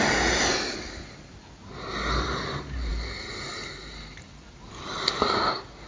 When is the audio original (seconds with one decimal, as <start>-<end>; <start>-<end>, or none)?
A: 0.0-5.9